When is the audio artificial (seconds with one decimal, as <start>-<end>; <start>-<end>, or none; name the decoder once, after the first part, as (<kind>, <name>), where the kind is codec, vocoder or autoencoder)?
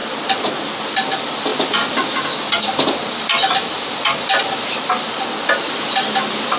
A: 0.0-0.5 (vocoder, BigVGAN v2); 1.5-4.4